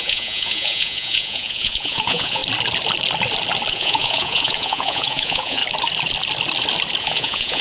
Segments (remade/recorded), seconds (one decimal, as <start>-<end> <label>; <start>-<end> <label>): 0.0-2.4 remade; 2.4-3.7 recorded; 3.7-5.6 remade; 5.6-7.0 recorded; 7.0-7.6 remade